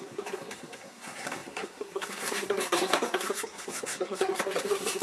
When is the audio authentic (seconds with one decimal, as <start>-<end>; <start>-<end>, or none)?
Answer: none